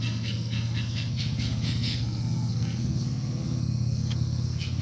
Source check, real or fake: fake